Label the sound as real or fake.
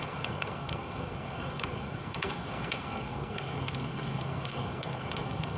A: fake